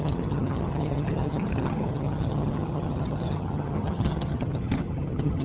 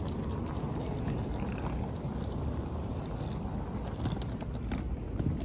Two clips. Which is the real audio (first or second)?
second